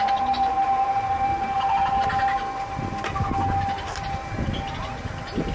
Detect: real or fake real